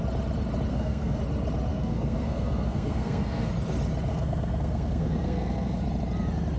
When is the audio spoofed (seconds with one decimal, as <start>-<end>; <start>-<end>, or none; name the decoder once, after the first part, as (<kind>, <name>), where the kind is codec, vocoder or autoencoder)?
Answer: 0.7-1.2 (codec, SNAC); 1.7-3.5; 4.1-5.8